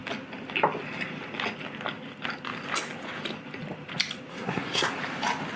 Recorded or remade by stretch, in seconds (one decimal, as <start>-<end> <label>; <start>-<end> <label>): 0.0-4.3 recorded; 4.3-4.9 remade; 4.9-5.6 recorded